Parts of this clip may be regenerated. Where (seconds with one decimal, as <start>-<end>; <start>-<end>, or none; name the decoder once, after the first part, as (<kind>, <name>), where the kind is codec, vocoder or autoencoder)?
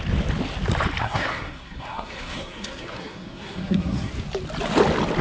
1.0-4.1 (codec, SNAC)